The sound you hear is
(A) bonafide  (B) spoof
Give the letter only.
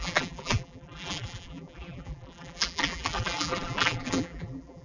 B